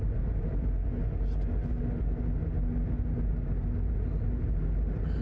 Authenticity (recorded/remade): recorded